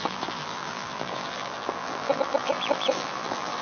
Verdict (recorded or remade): remade